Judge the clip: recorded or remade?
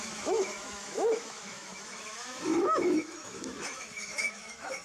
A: remade